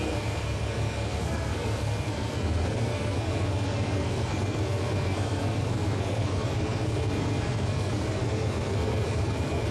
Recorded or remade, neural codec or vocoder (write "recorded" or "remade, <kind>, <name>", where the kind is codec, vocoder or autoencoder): remade, codec, SNAC